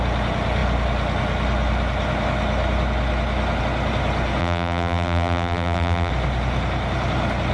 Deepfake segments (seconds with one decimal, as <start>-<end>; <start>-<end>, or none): 4.4-6.1